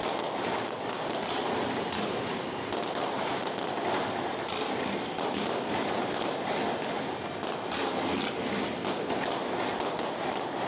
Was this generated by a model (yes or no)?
no